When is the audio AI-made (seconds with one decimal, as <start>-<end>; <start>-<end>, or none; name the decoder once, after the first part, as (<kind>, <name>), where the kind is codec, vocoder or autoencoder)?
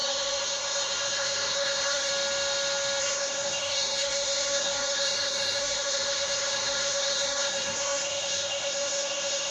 0.0-2.1 (codec, SNAC); 3.0-9.5